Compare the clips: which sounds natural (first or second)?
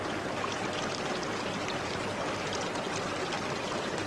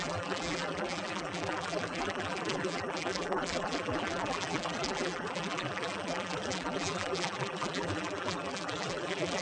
first